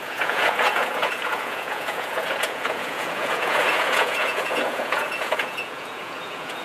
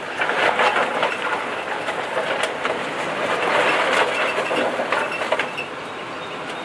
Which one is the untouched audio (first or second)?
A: second